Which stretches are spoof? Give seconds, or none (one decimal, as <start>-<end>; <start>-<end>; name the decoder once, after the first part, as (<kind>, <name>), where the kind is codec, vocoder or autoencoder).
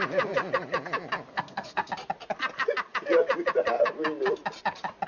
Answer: 1.3-1.9 (codec, SNAC)